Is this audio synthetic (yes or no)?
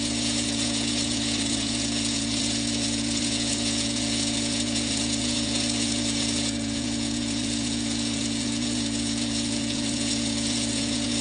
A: yes